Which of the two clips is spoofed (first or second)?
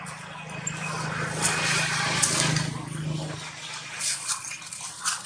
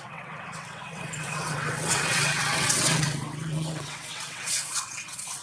second